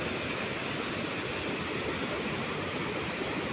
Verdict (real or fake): real